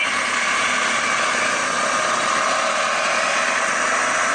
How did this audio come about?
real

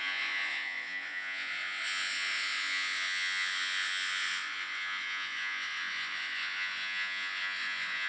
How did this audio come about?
fake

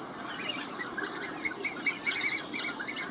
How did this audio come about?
real